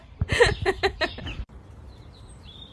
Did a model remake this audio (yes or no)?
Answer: yes